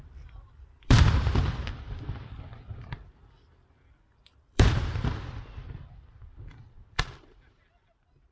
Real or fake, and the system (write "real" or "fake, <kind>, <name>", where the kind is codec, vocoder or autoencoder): fake, vocoder, BigVGAN v2